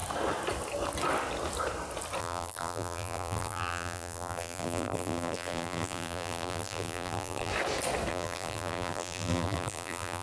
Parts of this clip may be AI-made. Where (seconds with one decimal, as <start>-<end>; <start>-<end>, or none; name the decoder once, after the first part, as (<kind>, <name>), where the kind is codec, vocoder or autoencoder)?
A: 2.2-7.5 (vocoder, BigVGAN v2); 8.1-10.2